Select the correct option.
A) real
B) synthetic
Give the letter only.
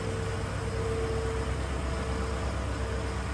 A